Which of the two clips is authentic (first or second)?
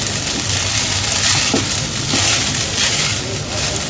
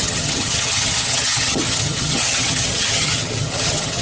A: first